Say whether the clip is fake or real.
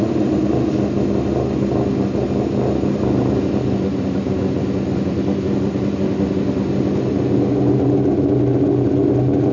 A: real